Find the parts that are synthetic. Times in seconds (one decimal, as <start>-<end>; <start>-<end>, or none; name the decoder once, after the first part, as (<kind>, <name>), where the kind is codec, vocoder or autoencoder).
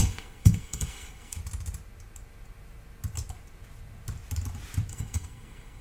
0.0-1.4 (codec, SNAC); 4.9-5.8